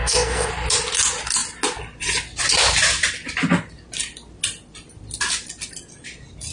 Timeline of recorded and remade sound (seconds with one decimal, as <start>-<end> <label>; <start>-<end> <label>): 0.0-0.5 remade; 0.5-6.5 recorded